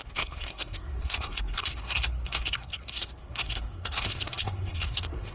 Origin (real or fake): fake